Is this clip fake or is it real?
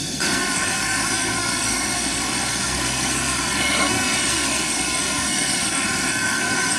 fake